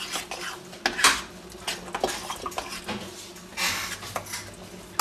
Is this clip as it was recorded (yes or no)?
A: yes